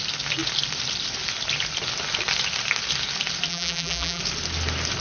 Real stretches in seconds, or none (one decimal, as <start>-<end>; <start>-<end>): 0.0-3.5; 4.2-5.0